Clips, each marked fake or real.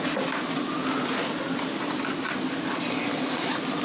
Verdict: real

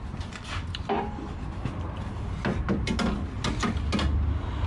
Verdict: real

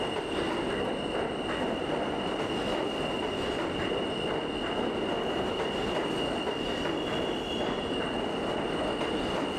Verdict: real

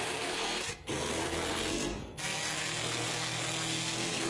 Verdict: fake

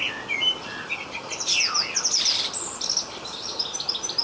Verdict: real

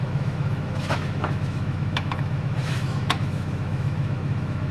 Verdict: fake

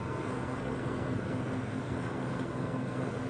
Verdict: fake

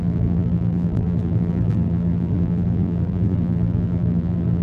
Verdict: fake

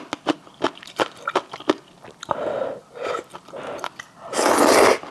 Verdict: real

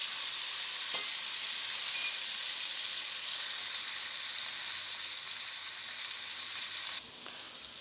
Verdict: real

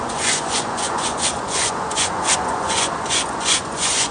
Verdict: fake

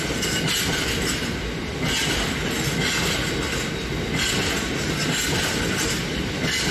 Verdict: real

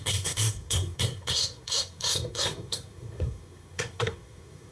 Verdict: fake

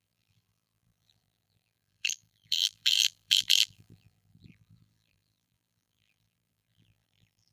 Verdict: fake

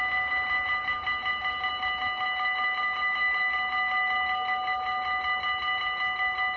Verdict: real